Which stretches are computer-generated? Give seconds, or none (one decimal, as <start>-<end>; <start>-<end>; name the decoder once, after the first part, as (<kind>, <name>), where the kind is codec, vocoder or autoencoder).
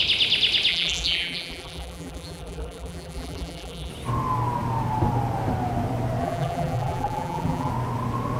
0.7-3.9 (vocoder, BigVGAN v2); 6.2-7.7